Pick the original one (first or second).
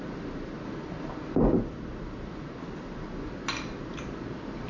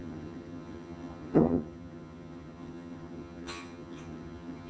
first